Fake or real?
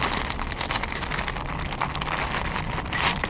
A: real